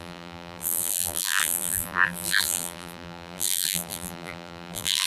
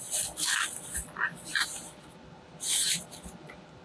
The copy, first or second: first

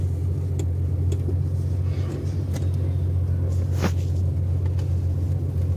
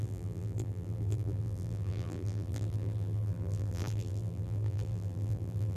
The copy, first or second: second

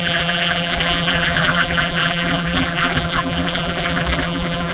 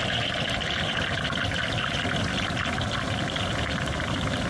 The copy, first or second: first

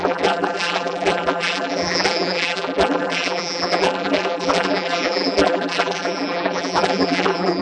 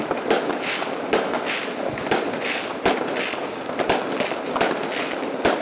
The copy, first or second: first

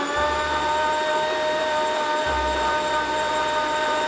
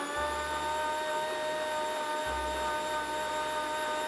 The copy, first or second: first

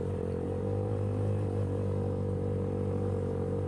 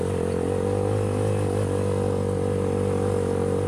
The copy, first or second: first